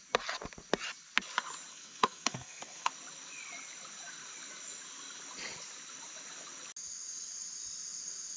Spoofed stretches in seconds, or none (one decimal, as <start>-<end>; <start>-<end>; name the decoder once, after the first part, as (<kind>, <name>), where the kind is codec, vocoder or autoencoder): 1.7-2.9 (codec, SNAC)